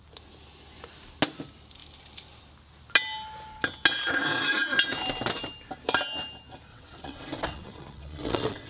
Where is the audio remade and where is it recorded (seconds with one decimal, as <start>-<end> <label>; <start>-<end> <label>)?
0.0-6.7 recorded; 6.7-8.7 remade